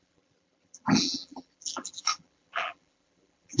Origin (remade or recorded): remade